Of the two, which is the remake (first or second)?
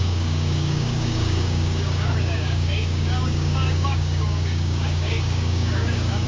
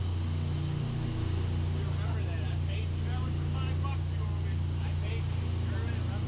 first